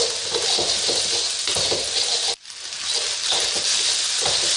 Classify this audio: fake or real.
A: real